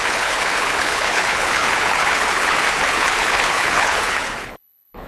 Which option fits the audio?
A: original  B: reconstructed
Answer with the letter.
B